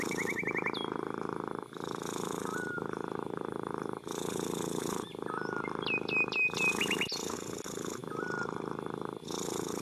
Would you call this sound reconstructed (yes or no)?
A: no